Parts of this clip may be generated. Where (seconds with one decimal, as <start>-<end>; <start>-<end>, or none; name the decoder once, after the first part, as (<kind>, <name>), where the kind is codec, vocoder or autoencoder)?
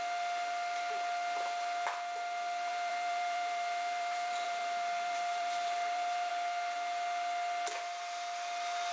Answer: 2.7-6.3 (vocoder, BigVGAN v2)